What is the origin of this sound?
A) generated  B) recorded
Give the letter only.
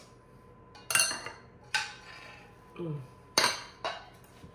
B